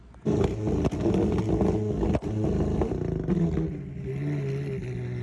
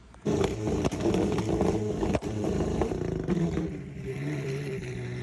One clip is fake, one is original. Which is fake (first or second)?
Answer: second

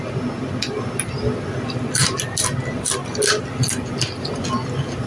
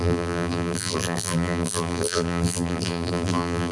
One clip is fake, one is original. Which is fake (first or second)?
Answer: second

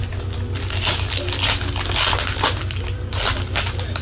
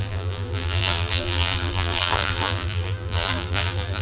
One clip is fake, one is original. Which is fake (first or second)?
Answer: second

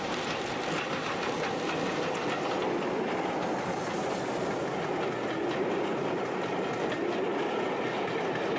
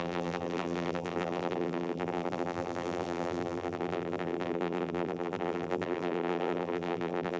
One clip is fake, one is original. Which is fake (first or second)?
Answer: second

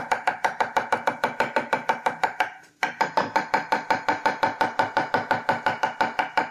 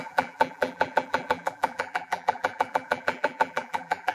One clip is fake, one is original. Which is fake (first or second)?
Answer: second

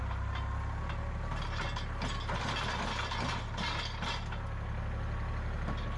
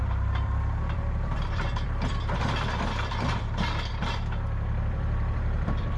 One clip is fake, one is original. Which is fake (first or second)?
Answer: second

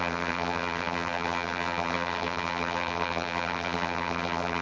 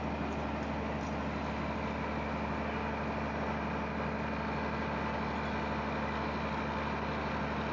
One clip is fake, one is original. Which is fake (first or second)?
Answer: first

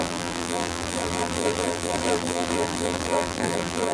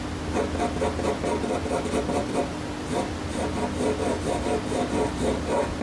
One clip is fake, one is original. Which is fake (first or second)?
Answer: first